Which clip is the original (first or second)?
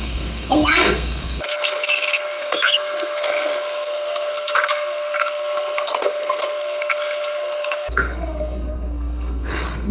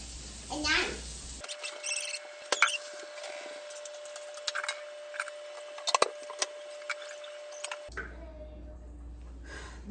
second